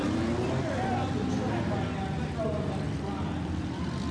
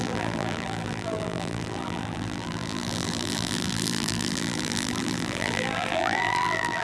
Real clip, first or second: first